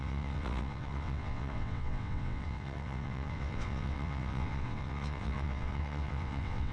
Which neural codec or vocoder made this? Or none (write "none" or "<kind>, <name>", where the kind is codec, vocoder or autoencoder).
vocoder, WaveNeXt